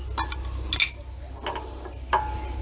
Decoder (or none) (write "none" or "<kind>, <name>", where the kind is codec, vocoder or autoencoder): none